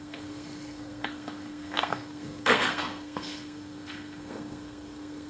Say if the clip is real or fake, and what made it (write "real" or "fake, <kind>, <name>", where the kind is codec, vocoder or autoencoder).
fake, codec, SNAC